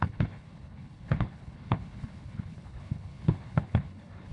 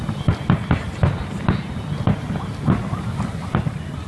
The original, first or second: second